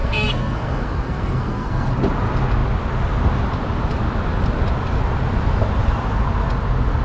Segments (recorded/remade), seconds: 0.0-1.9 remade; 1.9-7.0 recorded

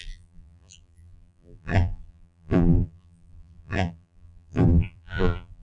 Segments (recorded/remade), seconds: 0.0-5.6 remade

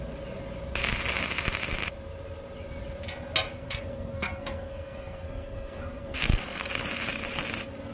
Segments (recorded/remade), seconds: 0.0-3.5 recorded; 3.5-6.7 remade; 6.7-7.9 recorded